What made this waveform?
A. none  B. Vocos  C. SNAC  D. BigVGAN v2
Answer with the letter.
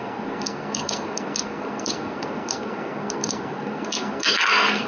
C